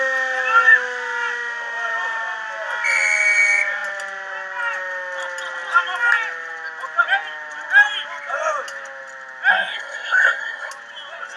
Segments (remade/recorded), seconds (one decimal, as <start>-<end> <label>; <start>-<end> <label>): 0.0-9.5 recorded; 9.5-10.7 remade; 10.7-11.4 recorded